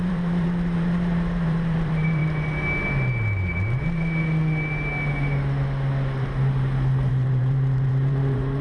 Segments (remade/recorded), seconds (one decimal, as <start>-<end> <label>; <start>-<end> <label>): 0.0-2.2 remade; 2.2-7.1 recorded; 7.1-8.6 remade